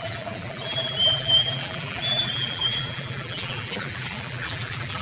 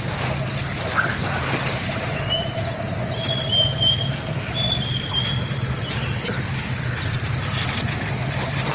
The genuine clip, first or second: second